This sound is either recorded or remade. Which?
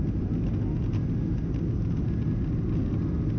recorded